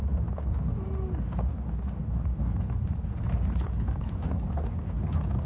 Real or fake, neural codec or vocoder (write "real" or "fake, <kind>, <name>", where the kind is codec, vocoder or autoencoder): real